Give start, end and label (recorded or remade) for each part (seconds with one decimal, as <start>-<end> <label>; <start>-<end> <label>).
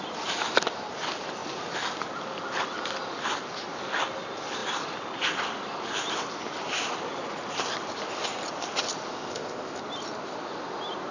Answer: 0.0-9.1 recorded; 9.1-9.8 remade; 9.8-11.1 recorded